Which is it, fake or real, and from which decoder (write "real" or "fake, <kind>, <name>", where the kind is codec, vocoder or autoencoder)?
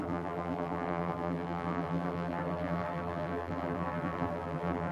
fake, vocoder, BigVGAN v2